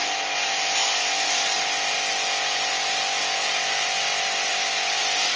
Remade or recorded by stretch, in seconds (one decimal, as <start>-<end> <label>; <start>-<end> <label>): 0.0-4.5 recorded; 4.5-5.0 remade; 5.0-5.4 recorded